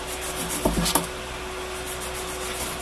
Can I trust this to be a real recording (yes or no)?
yes